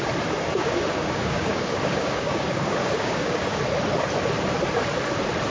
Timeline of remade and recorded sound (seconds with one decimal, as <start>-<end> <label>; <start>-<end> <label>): 0.0-0.5 recorded; 0.5-3.6 remade; 3.6-5.5 recorded